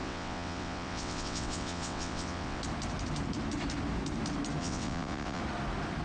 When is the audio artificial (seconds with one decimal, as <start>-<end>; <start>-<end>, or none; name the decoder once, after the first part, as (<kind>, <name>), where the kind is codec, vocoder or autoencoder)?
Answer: 0.0-2.6 (vocoder, WaveNeXt); 4.6-5.4